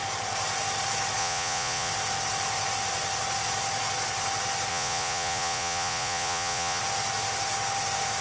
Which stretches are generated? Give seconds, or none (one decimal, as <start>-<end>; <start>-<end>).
1.2-1.9; 4.7-6.8